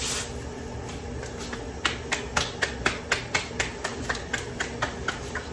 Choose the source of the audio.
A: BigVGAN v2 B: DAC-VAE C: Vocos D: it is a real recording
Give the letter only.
D